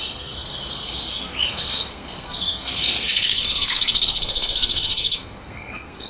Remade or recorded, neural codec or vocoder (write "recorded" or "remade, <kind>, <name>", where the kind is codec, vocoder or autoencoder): remade, codec, SNAC